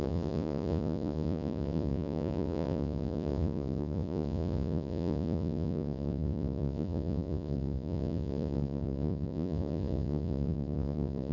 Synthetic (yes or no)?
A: yes